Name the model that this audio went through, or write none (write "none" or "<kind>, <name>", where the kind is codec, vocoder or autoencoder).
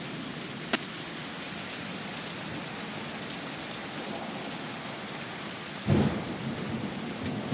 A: none